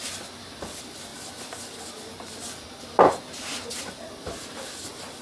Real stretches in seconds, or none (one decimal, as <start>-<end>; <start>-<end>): 0.0-5.2